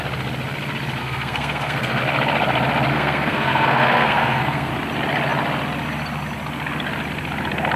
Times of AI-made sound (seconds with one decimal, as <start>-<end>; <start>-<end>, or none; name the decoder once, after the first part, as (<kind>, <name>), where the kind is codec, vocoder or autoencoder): 1.0-2.0 (codec, SNAC); 2.9-4.7